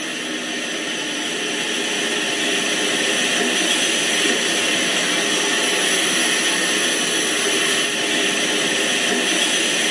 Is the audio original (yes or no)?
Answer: yes